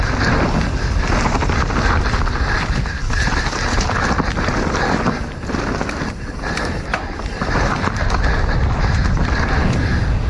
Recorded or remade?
recorded